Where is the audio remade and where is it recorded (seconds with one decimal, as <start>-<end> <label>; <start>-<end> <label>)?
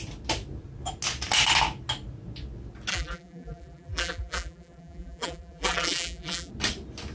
0.0-2.9 recorded; 2.9-6.5 remade; 6.5-7.1 recorded